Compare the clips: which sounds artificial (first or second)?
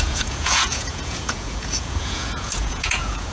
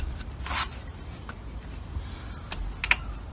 first